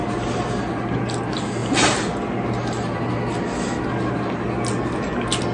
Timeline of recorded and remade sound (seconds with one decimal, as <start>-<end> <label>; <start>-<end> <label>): 0.0-5.5 recorded